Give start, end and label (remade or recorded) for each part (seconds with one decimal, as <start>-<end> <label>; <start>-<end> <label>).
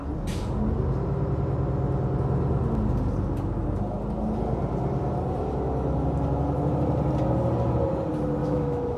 0.0-8.4 recorded; 8.4-9.0 remade